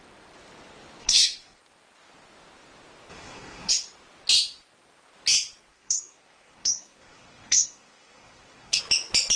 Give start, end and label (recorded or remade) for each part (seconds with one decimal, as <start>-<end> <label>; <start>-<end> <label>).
0.0-1.0 recorded; 1.0-1.6 remade; 1.6-3.1 recorded; 3.1-3.7 remade; 3.7-5.7 recorded; 5.7-8.8 remade; 8.8-9.4 recorded